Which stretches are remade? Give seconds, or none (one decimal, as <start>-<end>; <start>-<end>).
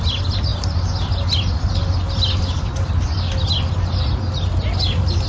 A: none